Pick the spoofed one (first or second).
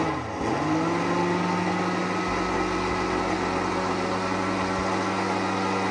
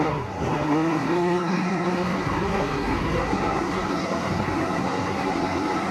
second